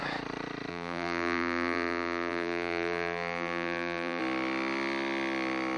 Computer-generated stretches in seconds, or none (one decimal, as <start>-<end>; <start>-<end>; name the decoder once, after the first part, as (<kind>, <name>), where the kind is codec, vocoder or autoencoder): 0.7-4.2 (vocoder, BigVGAN v2)

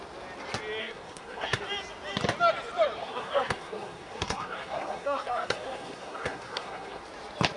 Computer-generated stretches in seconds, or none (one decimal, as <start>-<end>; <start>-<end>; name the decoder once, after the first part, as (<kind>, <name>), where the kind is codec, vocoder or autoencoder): 0.8-1.6 (codec, SNAC); 3.0-7.0